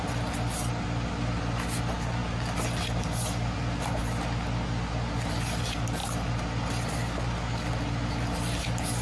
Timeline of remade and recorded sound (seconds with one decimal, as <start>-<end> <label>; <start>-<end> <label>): 0.0-9.0 recorded